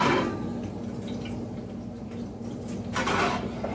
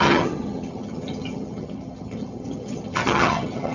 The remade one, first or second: second